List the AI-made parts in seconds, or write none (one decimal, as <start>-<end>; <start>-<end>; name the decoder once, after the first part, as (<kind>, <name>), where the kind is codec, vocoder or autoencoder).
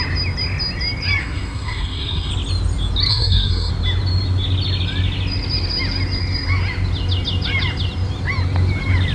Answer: 1.2-2.3 (codec, SNAC); 3.1-3.7